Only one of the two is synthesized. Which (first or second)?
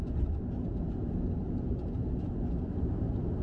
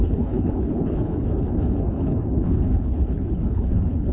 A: second